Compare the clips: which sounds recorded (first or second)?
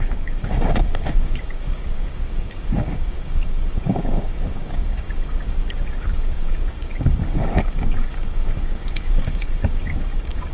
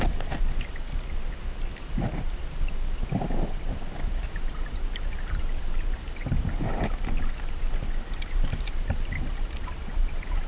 second